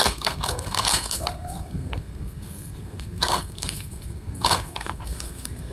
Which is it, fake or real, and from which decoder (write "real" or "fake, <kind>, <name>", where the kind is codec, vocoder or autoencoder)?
fake, codec, SNAC